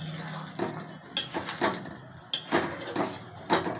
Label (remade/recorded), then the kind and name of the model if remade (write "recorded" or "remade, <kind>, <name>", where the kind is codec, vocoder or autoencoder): recorded